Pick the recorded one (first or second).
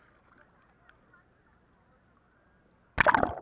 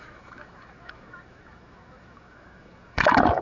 first